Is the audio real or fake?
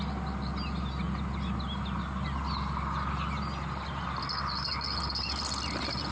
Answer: real